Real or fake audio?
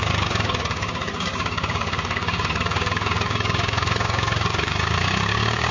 fake